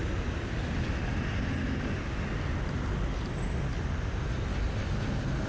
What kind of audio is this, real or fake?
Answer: real